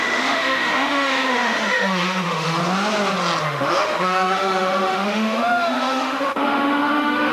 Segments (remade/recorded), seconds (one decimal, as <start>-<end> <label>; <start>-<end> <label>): 0.0-2.6 remade; 2.6-3.4 recorded; 3.4-7.3 remade